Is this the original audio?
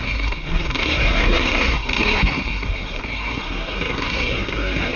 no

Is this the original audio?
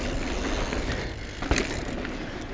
yes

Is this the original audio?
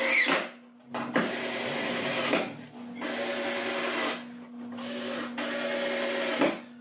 yes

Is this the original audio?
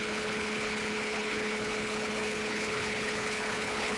no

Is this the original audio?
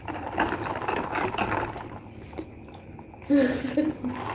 yes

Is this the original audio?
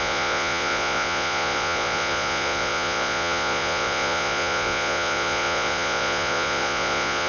no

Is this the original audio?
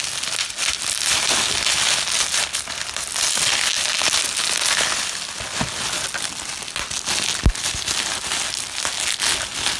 yes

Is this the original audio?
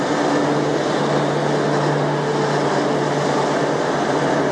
yes